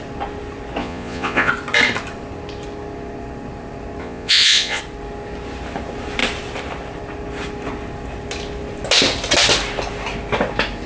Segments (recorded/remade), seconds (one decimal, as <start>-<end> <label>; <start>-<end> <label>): 0.0-0.8 recorded; 0.8-1.5 remade; 1.5-4.0 recorded; 4.0-4.8 remade; 4.8-10.9 recorded